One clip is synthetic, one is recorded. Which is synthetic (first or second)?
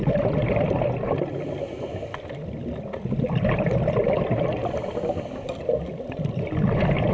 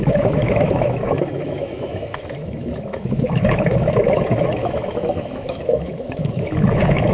second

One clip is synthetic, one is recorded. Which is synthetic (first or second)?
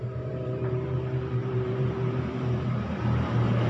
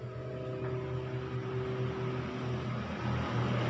first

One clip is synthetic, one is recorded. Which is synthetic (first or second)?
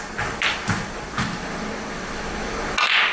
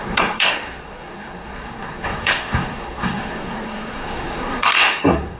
second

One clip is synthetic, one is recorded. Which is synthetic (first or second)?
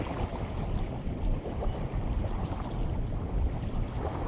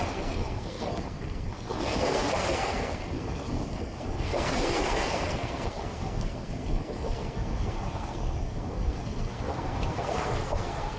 second